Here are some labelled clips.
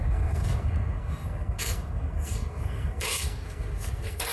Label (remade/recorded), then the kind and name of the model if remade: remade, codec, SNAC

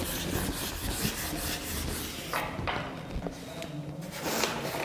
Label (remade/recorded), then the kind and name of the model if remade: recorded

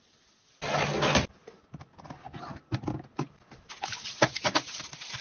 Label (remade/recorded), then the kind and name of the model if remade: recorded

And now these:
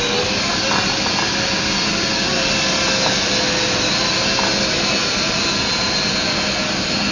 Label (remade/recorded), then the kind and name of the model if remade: recorded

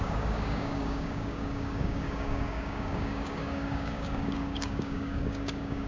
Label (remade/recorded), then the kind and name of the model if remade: remade, codec, DAC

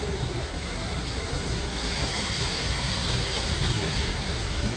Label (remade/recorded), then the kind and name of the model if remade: remade, codec, SNAC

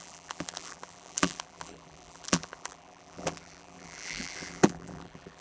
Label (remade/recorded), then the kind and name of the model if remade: remade, vocoder, BigVGAN v2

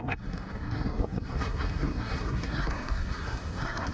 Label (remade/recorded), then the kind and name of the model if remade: remade, codec, SNAC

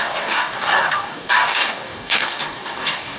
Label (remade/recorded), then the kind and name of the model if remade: remade, codec, DAC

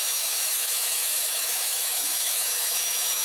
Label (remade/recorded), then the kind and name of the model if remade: remade, autoencoder, DAC-VAE